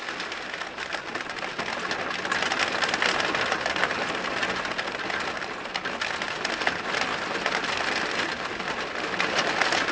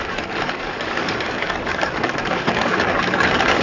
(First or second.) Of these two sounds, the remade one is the second